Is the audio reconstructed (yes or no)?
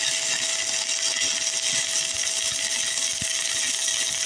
no